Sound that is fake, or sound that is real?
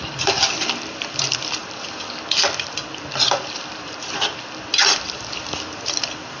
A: fake